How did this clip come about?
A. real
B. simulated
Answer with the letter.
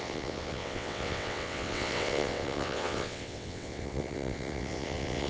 B